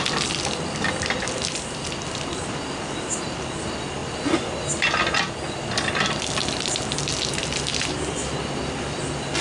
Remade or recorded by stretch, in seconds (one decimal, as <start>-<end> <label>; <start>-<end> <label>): 0.0-9.4 recorded